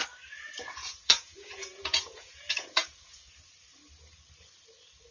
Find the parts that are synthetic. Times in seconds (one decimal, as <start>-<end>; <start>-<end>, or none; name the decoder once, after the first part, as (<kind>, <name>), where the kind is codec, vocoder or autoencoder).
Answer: 0.8-3.3 (vocoder, Vocos)